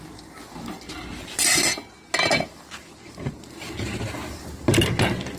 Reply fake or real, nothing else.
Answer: real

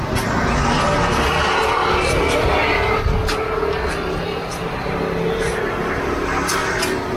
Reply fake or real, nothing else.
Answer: real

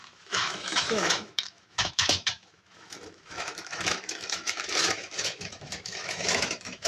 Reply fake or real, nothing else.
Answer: fake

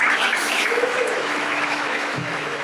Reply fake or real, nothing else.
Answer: fake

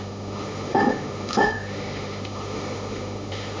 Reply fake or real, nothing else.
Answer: fake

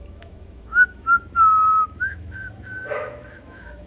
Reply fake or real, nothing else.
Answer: fake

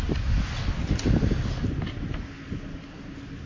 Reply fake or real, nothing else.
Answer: real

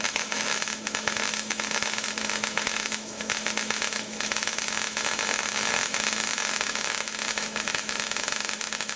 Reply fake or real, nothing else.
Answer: fake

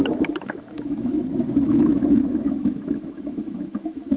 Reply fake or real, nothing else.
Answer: fake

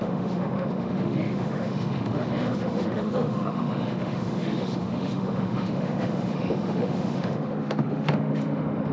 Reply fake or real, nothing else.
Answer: fake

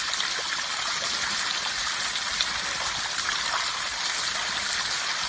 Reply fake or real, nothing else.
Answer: real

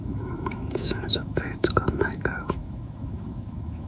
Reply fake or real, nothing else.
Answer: fake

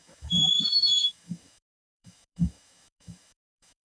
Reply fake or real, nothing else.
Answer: fake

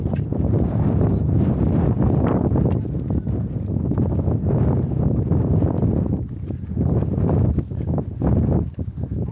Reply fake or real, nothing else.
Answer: real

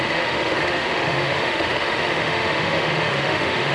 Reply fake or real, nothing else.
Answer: fake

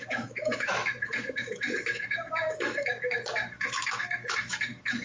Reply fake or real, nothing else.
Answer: fake